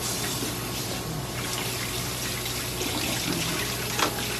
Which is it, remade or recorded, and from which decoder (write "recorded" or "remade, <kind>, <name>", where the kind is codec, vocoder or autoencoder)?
recorded